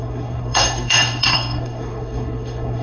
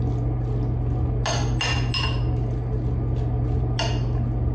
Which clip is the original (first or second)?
second